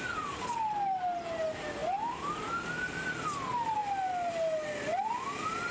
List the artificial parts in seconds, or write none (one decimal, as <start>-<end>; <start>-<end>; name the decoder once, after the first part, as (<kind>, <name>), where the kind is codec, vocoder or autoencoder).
none